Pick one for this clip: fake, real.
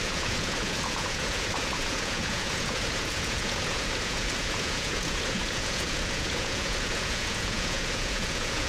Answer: fake